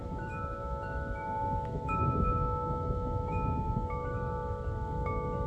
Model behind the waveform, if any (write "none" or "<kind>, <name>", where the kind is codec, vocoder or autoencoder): autoencoder, DAC-VAE